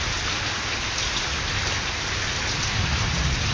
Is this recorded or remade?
recorded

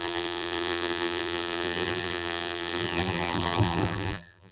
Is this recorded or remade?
remade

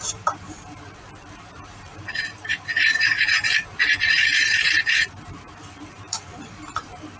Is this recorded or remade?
remade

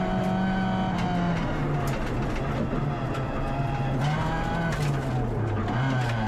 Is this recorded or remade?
recorded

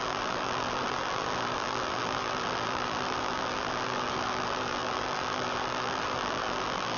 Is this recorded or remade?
remade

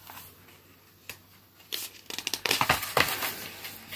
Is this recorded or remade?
recorded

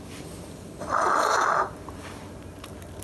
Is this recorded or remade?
remade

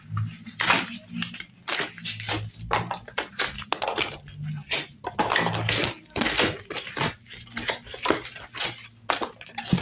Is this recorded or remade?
recorded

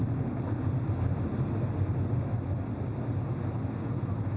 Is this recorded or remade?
recorded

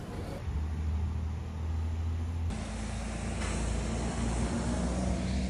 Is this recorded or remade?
recorded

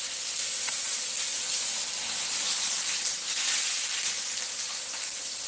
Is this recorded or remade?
recorded